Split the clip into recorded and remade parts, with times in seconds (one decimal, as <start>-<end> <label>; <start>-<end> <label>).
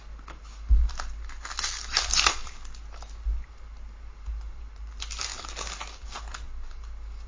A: 0.0-7.3 recorded